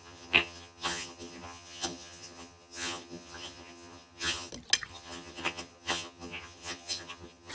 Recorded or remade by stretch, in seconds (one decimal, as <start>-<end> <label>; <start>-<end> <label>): 0.0-4.5 remade; 4.5-4.9 recorded; 4.9-7.5 remade